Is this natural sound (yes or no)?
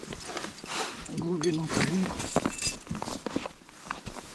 yes